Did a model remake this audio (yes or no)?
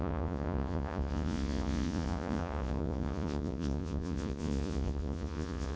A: yes